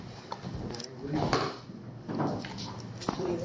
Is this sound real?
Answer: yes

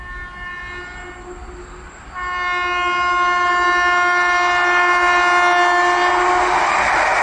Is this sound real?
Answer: yes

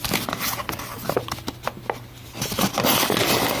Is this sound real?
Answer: yes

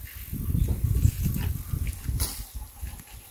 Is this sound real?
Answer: yes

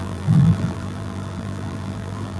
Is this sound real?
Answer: no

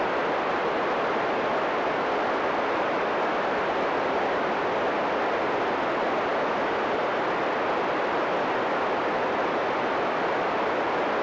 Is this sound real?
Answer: yes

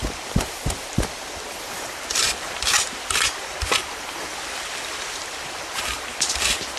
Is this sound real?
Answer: no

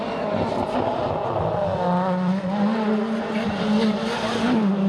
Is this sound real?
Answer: yes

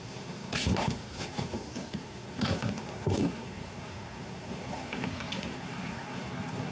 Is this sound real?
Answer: no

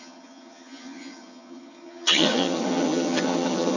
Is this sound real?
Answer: no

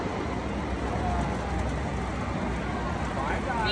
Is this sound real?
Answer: yes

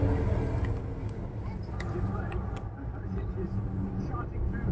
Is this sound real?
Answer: yes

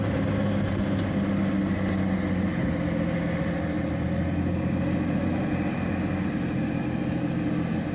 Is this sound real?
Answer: yes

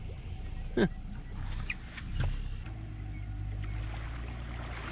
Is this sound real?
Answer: yes